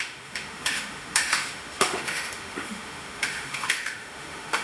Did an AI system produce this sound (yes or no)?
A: yes